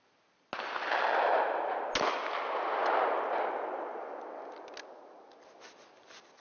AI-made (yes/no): no